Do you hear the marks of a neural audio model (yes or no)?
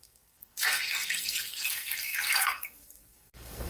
yes